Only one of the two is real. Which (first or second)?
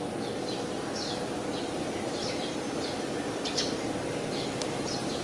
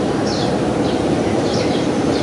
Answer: first